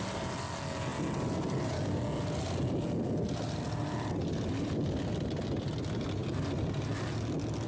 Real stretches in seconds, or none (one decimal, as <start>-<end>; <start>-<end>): 0.0-7.7